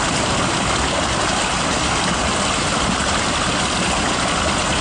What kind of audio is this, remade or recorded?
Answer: recorded